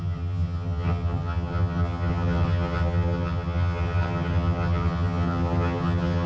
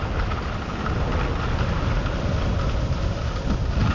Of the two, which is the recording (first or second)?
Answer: second